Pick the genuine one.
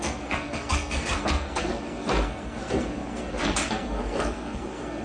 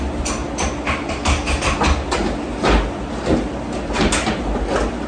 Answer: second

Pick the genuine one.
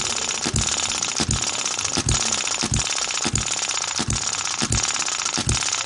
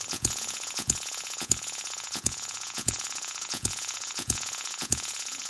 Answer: first